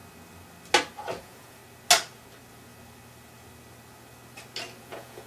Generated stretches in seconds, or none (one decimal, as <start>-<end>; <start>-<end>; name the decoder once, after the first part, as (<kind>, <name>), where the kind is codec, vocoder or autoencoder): 1.2-1.6 (vocoder, Vocos); 4.8-5.3